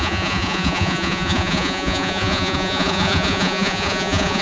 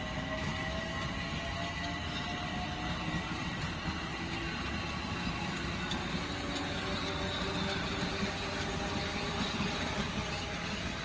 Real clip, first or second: second